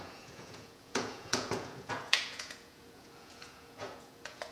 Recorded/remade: remade